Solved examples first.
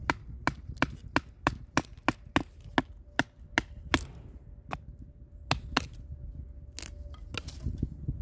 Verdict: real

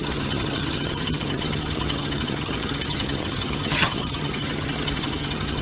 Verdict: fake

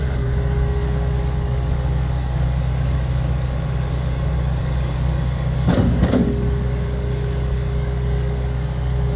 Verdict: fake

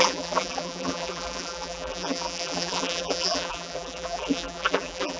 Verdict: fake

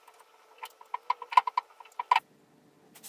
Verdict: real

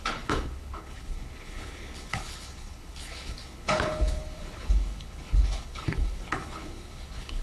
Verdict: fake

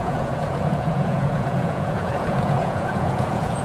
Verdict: fake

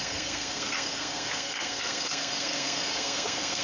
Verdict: fake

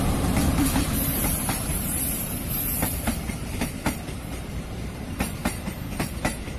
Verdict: fake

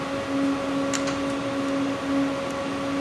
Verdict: real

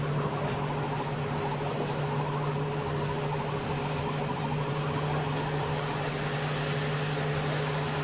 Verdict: real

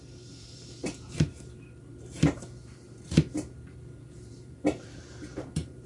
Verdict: fake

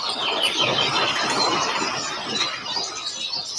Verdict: real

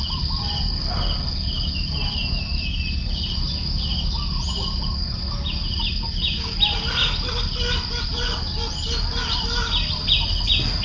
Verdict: real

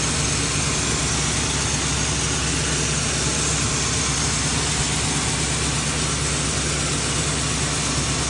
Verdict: real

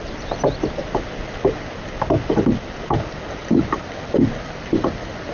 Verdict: real